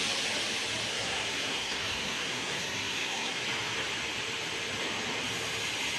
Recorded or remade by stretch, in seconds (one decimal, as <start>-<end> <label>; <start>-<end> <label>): 0.0-0.9 recorded; 0.9-3.4 remade; 3.4-6.0 recorded